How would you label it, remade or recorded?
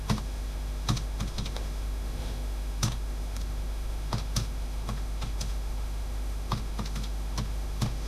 remade